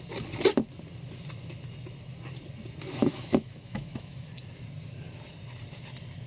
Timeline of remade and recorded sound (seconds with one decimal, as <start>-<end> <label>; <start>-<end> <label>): 0.0-3.0 recorded; 3.0-4.3 remade; 4.3-6.3 recorded